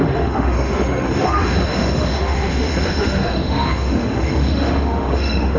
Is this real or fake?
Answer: fake